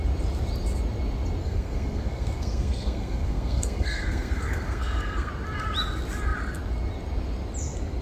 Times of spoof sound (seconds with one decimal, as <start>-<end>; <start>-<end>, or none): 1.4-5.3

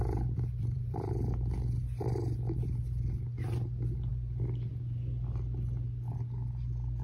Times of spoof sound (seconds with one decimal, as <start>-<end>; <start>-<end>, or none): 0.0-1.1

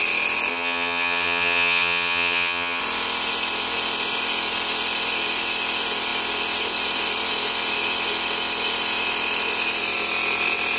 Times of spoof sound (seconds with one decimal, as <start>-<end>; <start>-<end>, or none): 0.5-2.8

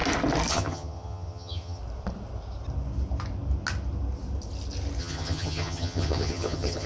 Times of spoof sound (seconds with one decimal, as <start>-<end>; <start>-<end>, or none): 0.5-1.8; 5.0-6.9

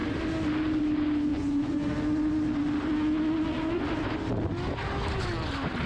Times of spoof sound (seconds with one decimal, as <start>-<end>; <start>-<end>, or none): 1.3-1.9

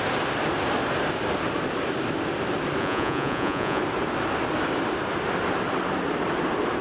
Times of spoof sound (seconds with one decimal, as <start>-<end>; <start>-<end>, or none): 2.8-3.8